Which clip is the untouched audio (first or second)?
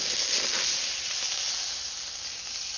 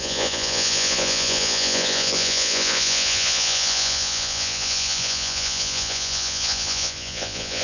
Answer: first